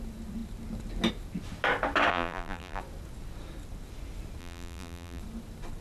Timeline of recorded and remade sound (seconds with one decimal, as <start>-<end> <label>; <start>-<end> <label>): 0.0-2.1 recorded; 2.1-2.8 remade; 2.8-4.4 recorded; 4.4-5.2 remade; 5.2-5.8 recorded